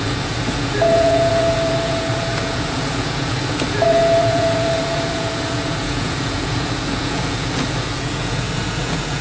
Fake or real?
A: fake